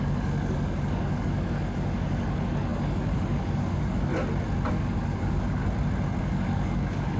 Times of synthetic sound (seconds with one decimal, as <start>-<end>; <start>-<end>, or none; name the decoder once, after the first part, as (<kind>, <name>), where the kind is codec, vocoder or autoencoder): 0.0-4.1 (codec, DAC); 4.7-5.6; 6.2-7.2